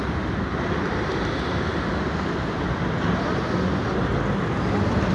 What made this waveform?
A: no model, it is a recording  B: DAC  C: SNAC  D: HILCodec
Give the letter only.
A